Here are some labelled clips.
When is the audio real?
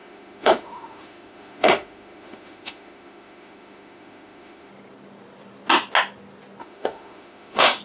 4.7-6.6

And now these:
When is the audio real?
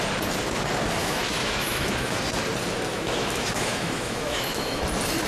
0.0-1.0; 2.2-2.9; 4.8-5.3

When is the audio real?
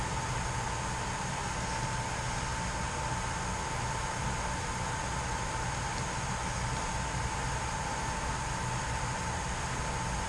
0.0-10.3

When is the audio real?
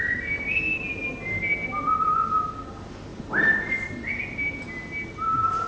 0.0-5.7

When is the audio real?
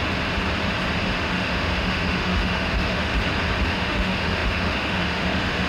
0.0-1.2; 3.1-3.6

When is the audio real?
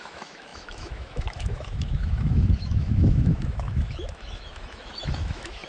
none